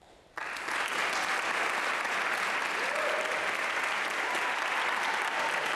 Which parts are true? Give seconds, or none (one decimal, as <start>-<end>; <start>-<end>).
0.0-5.7